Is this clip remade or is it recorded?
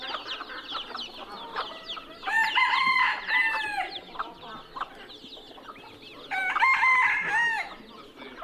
recorded